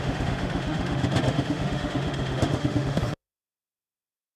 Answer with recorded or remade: remade